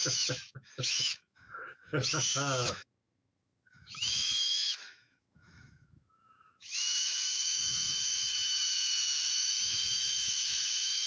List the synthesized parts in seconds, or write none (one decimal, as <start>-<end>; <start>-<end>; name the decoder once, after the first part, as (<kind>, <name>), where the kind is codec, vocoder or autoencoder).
0.0-11.1 (autoencoder, DAC-VAE)